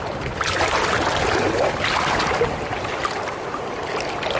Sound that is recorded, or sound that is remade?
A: recorded